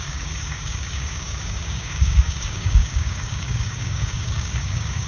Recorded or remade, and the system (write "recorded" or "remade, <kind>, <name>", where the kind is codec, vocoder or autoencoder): remade, codec, DAC